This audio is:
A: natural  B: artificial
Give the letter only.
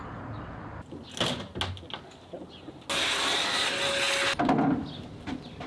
A